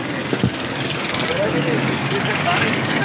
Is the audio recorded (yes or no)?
no